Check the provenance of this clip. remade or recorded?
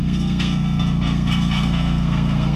remade